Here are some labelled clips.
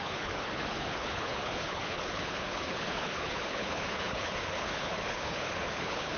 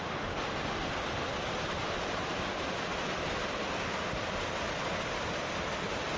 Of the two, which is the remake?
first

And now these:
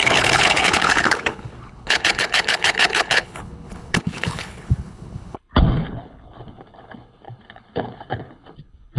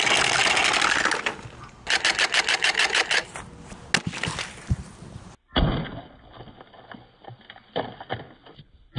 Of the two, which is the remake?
first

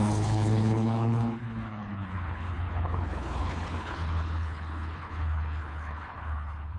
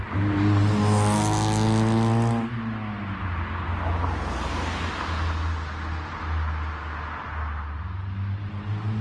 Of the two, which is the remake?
first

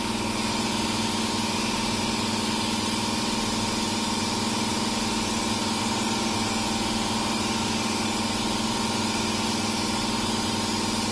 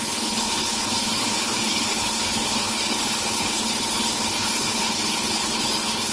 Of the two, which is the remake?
second